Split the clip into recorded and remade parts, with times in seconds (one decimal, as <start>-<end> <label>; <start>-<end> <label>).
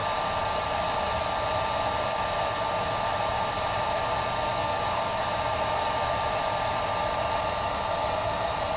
0.0-4.5 recorded; 4.5-5.2 remade; 5.2-8.8 recorded